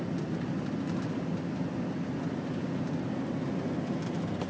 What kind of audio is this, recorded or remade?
recorded